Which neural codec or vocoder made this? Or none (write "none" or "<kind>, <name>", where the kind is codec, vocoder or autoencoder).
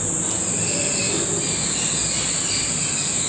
none